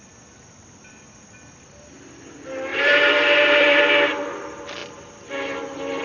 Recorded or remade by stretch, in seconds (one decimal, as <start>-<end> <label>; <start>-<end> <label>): 0.0-2.7 recorded; 2.7-3.8 remade; 3.8-6.0 recorded